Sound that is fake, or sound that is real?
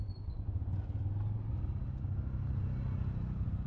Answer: real